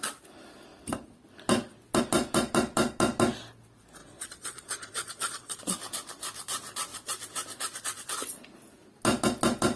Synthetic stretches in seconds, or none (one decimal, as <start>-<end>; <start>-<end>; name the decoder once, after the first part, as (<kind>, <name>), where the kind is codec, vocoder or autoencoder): 4.0-5.6 (vocoder, Vocos)